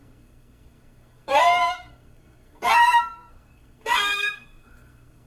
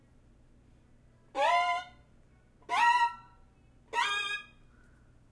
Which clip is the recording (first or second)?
second